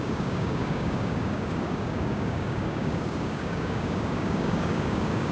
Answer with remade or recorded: remade